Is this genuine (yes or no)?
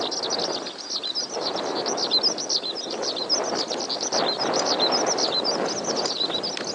yes